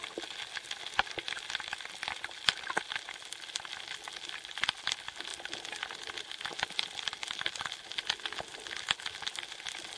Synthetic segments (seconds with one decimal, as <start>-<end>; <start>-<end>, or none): none

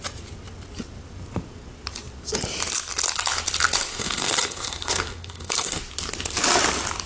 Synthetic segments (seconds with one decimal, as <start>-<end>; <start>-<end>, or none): 3.9-5.8